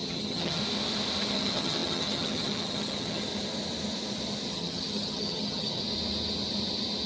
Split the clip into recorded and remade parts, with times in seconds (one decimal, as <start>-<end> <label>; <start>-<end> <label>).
0.0-0.6 remade; 0.6-1.3 recorded; 1.3-3.3 remade; 3.3-4.5 recorded; 4.5-5.8 remade; 5.8-7.1 recorded